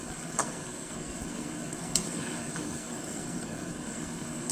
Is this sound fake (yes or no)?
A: yes